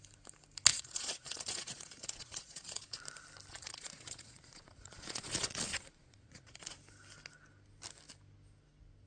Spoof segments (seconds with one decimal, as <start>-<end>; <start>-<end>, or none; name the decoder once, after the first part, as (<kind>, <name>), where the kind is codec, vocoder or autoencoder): 0.7-3.0 (vocoder, Vocos); 3.5-6.8